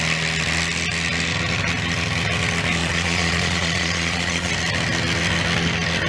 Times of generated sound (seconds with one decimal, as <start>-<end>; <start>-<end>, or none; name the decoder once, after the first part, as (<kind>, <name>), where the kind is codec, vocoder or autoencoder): 2.8-4.5 (vocoder, Vocos)